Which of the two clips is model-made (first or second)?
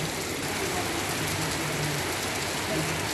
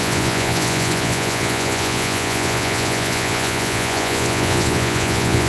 second